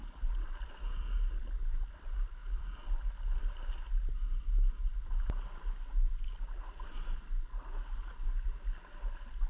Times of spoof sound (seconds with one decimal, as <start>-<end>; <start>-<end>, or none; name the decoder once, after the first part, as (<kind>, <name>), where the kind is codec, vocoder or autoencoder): none